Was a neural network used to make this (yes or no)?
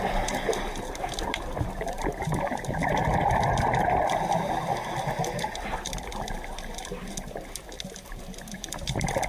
no